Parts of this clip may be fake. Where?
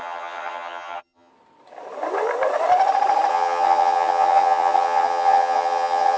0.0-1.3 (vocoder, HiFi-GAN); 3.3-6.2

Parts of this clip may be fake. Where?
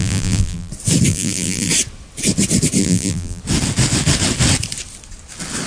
0.0-0.7 (vocoder, BigVGAN v2); 1.1-1.7; 2.8-3.4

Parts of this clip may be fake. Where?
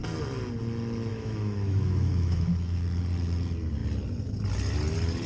1.1-2.8 (autoencoder, DAC-VAE)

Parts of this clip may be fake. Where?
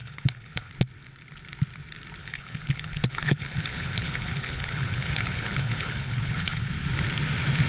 0.0-0.7 (codec, HILCodec); 2.2-6.7